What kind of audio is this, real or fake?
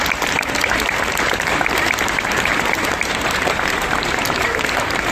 fake